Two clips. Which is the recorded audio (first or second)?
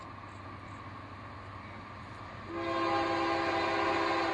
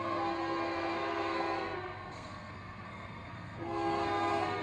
first